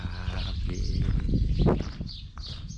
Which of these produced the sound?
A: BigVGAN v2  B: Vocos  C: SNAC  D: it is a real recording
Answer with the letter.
D